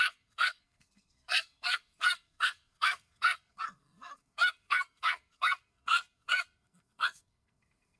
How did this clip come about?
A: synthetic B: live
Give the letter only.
A